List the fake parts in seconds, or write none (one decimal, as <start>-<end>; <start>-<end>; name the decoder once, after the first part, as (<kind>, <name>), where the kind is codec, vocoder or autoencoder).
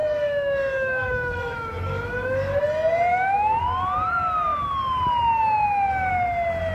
0.0-2.6 (autoencoder, DAC-VAE); 3.1-3.6